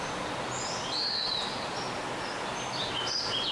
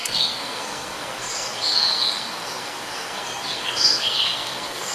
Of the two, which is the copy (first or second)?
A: second